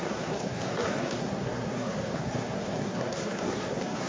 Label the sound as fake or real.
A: fake